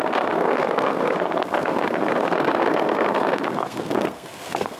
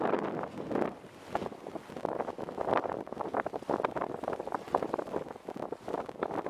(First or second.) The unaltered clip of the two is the second